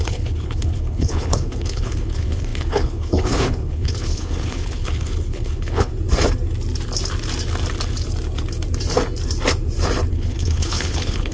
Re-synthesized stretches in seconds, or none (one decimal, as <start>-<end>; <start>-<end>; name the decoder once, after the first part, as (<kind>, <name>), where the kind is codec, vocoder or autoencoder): 0.0-5.9 (codec, HILCodec); 10.1-11.3